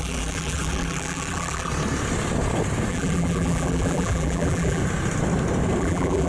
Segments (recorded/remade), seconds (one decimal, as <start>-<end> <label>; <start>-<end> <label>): 0.0-1.7 remade; 1.7-2.9 recorded; 2.9-4.8 remade; 4.8-5.8 recorded; 5.8-6.3 remade